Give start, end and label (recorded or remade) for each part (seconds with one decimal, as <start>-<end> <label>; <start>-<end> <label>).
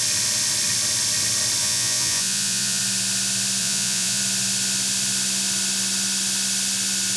0.0-1.6 recorded; 1.6-2.8 remade; 2.8-3.6 recorded; 3.6-4.2 remade; 4.2-7.2 recorded